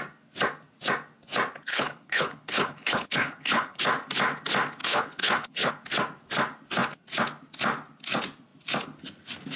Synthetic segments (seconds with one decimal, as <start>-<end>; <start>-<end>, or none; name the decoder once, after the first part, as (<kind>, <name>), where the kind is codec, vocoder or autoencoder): 1.7-3.8 (codec, HILCodec); 4.8-5.7